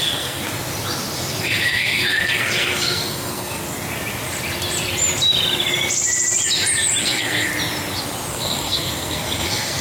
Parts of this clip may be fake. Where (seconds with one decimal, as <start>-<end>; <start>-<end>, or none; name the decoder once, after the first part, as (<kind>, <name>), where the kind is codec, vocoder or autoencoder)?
0.0-0.4 (codec, SNAC); 1.4-3.6; 7.0-7.5; 8.3-9.8